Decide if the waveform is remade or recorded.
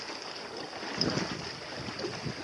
recorded